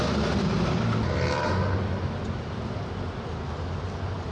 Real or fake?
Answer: real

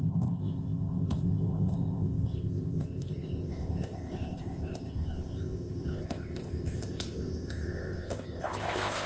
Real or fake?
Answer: fake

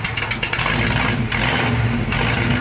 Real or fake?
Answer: real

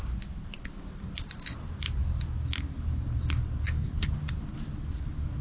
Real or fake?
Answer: real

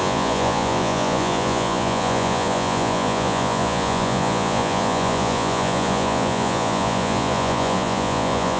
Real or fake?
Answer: fake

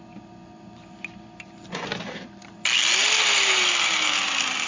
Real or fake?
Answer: real